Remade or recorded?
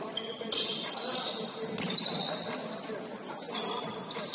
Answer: recorded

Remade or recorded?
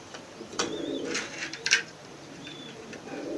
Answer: remade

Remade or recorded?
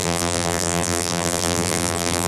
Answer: remade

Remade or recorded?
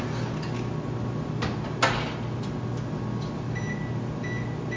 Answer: recorded